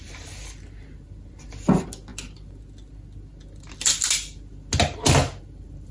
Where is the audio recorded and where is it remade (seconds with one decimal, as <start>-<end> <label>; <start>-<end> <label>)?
0.0-5.9 recorded